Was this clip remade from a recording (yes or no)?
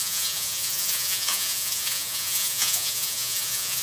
yes